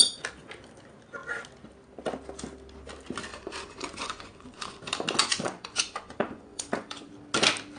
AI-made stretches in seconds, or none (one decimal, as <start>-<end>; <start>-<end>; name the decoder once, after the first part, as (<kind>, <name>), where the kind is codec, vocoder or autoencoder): 3.3-4.8 (vocoder, Vocos); 5.2-7.1